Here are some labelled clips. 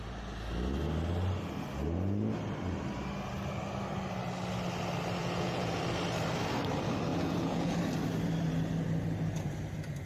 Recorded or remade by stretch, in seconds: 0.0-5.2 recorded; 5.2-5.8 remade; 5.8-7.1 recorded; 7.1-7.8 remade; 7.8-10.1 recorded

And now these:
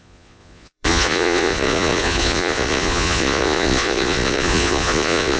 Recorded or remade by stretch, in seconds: 0.0-5.4 remade

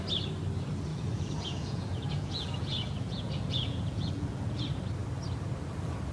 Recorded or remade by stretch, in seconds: 0.0-0.9 recorded; 0.9-4.6 remade; 4.6-6.1 recorded